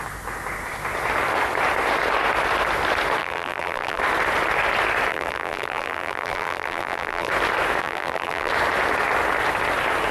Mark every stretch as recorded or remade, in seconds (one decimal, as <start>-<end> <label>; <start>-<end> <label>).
0.0-3.2 recorded; 3.2-4.0 remade; 4.0-5.1 recorded; 5.1-7.3 remade; 7.3-7.8 recorded; 7.8-8.5 remade; 8.5-10.1 recorded